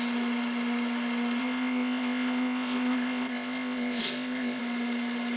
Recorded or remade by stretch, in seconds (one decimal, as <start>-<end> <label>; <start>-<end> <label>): 0.0-1.4 recorded; 1.4-4.6 remade; 4.6-5.4 recorded